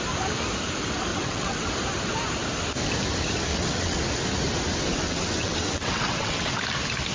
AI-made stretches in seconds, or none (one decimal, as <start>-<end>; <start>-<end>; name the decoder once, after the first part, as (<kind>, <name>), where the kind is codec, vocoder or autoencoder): 1.1-1.7 (vocoder, WaveNeXt); 3.5-4.0; 4.9-6.6